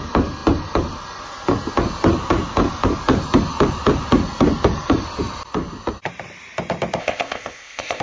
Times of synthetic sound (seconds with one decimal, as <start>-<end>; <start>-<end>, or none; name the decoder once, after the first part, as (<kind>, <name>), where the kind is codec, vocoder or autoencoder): 7.0-8.0 (codec, ZipCodec)